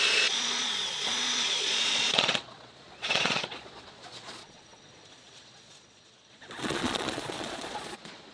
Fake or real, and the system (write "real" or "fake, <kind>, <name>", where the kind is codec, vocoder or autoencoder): fake, vocoder, Vocos